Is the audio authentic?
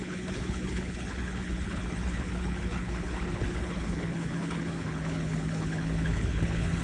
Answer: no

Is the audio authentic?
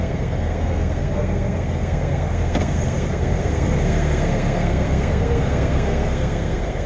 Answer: no